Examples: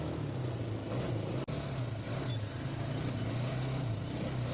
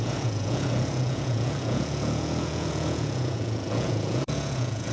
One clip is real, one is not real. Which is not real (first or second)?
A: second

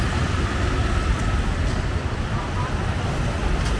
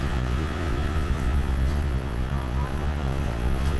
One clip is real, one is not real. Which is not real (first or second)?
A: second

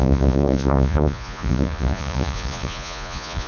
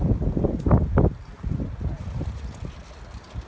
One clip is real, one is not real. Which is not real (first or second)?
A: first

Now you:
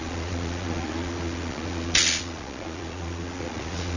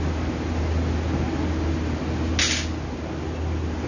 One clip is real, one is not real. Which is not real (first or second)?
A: first